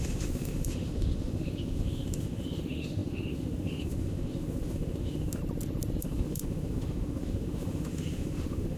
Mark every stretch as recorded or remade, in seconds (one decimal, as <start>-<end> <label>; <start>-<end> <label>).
0.0-5.4 remade; 5.4-6.0 recorded; 6.0-8.8 remade